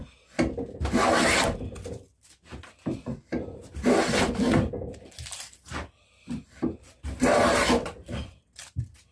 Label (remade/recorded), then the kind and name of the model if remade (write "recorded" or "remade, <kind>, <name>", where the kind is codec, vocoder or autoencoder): recorded